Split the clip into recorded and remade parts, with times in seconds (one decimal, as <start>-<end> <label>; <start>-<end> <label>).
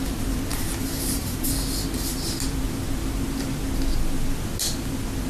0.0-0.5 recorded; 0.5-1.5 remade; 1.5-5.3 recorded